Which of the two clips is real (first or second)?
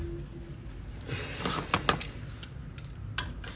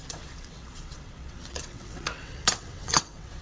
first